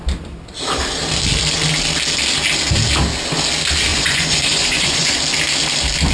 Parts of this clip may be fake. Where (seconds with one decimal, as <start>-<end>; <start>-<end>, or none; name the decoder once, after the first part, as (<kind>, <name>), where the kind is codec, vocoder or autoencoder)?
3.9-5.1 (vocoder, Vocos)